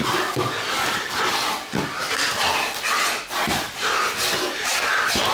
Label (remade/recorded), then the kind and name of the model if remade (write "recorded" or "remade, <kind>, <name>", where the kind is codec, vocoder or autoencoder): recorded